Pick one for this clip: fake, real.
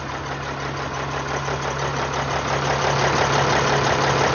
real